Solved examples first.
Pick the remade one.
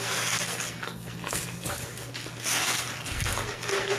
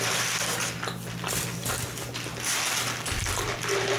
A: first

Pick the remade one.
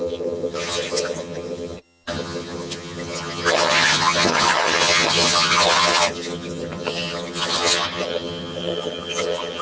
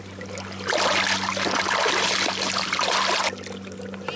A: first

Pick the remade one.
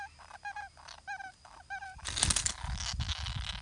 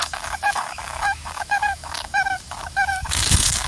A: second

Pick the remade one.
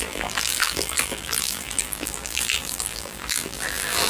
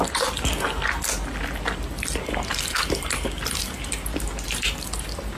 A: first